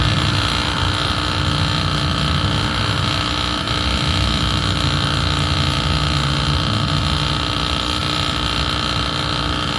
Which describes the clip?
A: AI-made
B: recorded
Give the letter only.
B